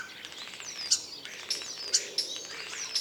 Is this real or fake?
real